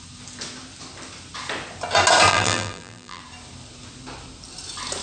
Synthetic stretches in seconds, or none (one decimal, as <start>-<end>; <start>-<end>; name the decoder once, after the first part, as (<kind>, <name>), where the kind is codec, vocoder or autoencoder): 2.3-3.2 (vocoder, BigVGAN v2)